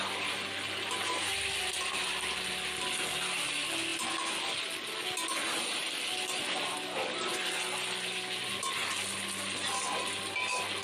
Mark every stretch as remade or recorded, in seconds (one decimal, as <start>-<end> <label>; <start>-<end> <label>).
0.0-10.8 recorded